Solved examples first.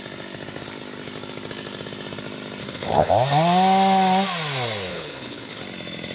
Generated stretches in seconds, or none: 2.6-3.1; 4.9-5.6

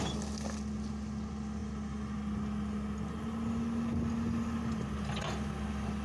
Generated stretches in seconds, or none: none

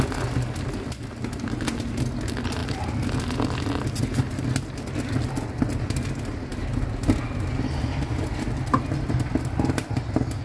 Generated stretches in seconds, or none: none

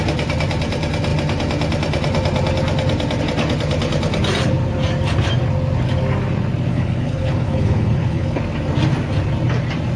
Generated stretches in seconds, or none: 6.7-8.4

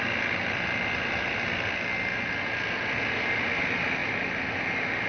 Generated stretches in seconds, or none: none

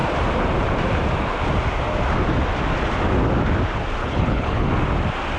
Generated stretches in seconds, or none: 4.0-4.7